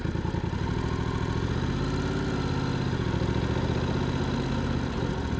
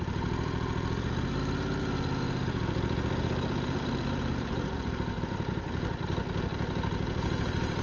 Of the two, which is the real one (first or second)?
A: first